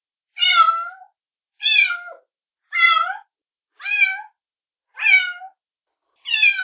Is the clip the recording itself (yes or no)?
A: yes